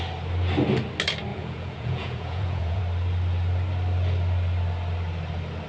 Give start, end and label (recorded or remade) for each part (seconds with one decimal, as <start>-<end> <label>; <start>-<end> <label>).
0.0-1.3 recorded; 1.3-2.8 remade; 2.8-5.7 recorded